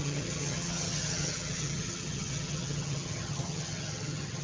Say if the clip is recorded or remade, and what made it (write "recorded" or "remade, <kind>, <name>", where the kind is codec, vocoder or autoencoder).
remade, vocoder, HiFi-GAN